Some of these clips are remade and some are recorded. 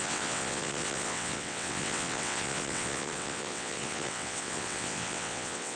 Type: remade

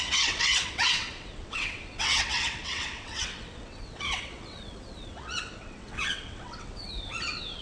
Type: remade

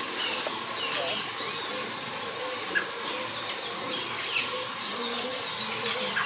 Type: recorded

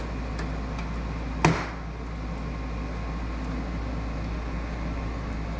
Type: recorded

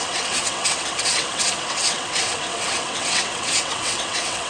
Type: remade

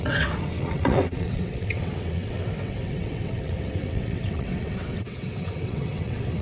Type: remade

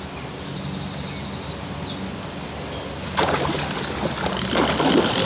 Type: recorded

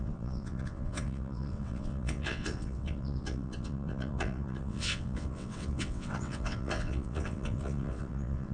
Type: remade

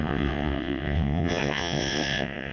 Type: remade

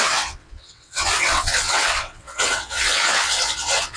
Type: remade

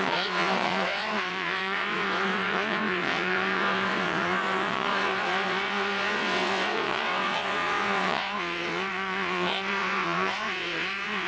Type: remade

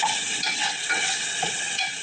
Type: remade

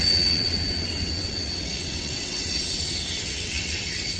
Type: remade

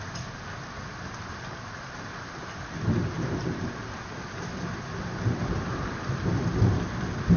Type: recorded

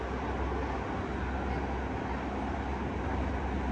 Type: recorded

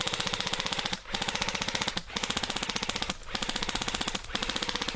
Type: recorded